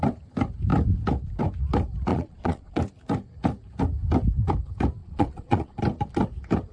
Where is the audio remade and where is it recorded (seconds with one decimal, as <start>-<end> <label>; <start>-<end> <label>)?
0.0-2.1 recorded; 2.1-2.8 remade; 2.8-5.0 recorded; 5.0-5.8 remade; 5.8-6.7 recorded